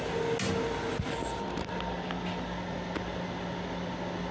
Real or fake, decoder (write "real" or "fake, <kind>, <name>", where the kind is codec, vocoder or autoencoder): real